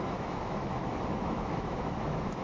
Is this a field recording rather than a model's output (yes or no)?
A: no